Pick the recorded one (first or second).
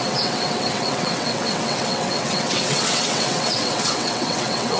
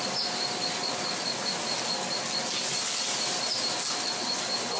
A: second